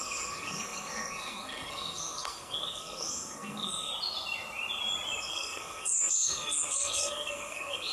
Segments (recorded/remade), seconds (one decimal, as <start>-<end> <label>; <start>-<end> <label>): 0.0-3.9 remade; 3.9-5.2 recorded; 5.2-7.9 remade